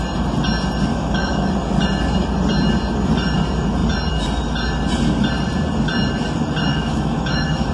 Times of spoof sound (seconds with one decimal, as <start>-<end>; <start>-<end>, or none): 0.9-1.5; 6.7-7.7